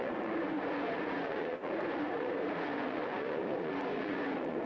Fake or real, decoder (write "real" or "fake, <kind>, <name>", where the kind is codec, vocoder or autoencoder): fake, vocoder, Vocos